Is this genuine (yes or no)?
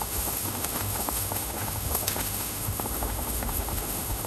no